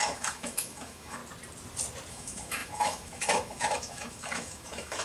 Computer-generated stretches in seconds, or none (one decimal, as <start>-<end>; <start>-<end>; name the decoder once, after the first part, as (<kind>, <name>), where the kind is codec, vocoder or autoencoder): 0.0-1.2 (autoencoder, DAC-VAE); 2.1-5.0